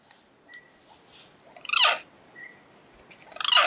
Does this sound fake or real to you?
real